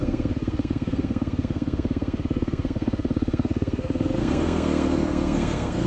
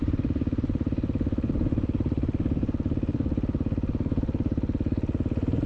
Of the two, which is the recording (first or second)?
second